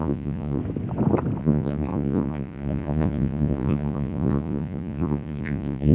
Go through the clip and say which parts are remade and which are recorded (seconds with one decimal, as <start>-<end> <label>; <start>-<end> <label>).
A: 0.0-0.6 remade; 0.6-1.4 recorded; 1.4-5.9 remade